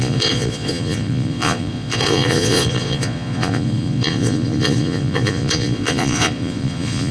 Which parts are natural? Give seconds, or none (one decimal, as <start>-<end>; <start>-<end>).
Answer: none